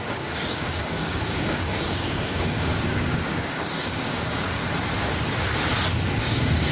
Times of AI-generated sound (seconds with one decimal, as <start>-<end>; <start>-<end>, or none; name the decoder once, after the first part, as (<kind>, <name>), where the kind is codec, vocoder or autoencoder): 0.0-4.6 (codec, DAC); 6.2-6.7